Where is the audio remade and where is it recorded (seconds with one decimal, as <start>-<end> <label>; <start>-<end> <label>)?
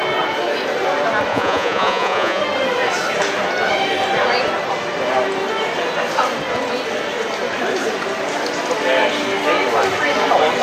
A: 0.0-1.3 recorded; 1.3-2.4 remade; 2.4-10.6 recorded